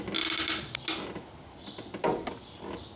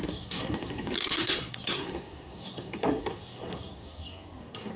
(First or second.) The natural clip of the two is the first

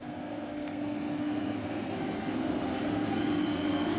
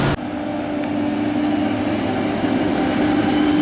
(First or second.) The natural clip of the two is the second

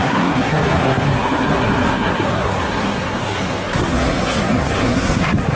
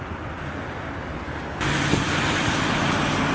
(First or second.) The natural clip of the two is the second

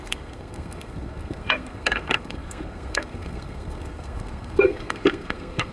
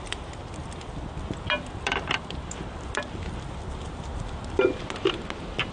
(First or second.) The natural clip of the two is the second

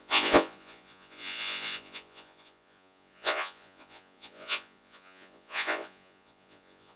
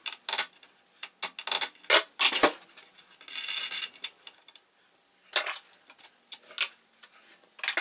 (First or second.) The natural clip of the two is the second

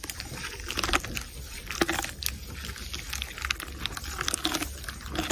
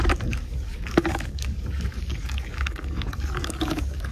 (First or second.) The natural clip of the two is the first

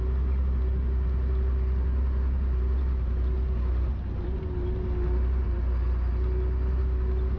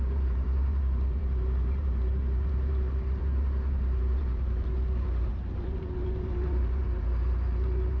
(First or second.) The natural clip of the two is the first